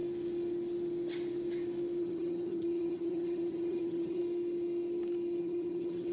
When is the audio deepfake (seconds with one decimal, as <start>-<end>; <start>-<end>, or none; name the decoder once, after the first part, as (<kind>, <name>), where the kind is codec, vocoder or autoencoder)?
2.0-4.2 (vocoder, HiFi-GAN); 5.4-6.1